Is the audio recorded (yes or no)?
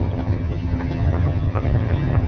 no